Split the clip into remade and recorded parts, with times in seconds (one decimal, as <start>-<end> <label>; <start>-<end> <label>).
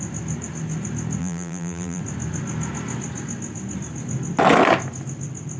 0.0-1.2 recorded; 1.2-2.0 remade; 2.0-5.6 recorded